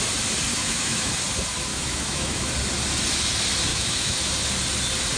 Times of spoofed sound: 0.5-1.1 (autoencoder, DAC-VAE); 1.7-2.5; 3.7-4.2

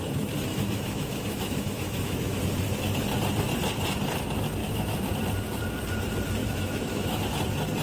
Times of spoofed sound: 0.5-2.4 (autoencoder, DAC-VAE); 4.6-5.1; 6.4-7.2

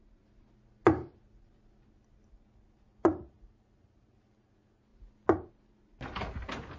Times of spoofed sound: none

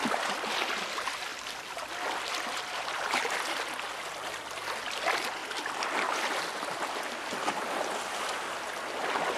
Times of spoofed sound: none

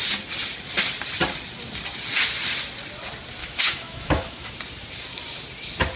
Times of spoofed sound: 3.4-4.5 (autoencoder, DAC-VAE)